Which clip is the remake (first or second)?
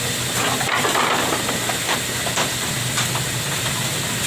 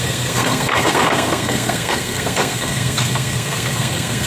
second